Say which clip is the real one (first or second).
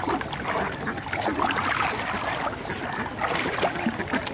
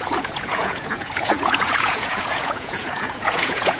first